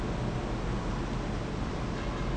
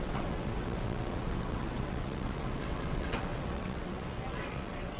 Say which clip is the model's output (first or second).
second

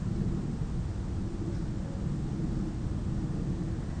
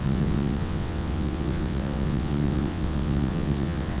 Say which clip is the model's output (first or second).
second